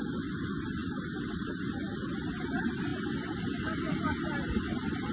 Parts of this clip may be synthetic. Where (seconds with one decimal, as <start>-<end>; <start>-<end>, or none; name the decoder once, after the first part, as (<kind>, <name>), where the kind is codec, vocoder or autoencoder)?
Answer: 0.8-1.6 (vocoder, BigVGAN v2)